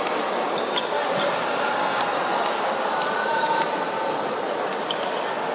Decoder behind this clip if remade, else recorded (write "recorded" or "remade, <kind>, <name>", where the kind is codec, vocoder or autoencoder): recorded